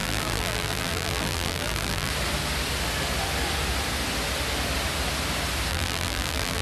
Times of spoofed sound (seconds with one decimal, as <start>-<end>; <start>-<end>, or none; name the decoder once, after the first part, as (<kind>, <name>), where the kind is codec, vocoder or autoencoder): 0.0-2.1 (vocoder, BigVGAN v2); 5.7-6.6